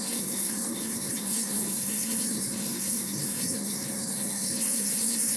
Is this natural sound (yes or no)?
no